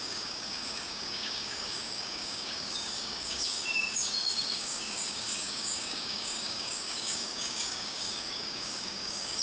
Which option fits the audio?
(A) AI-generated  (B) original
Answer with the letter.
A